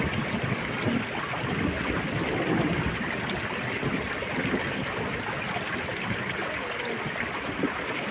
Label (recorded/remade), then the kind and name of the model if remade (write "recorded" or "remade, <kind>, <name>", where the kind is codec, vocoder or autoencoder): recorded